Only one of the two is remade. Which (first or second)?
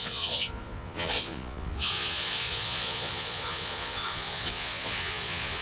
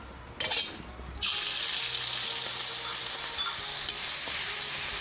first